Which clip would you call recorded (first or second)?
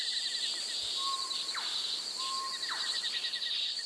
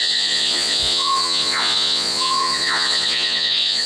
first